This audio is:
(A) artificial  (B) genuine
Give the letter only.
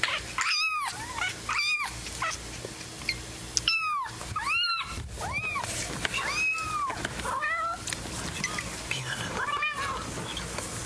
B